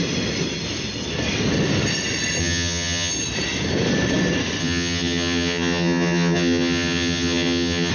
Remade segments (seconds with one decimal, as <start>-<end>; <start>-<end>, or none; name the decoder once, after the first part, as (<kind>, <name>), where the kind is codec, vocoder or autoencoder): 2.4-3.1 (vocoder, HiFi-GAN); 4.6-7.9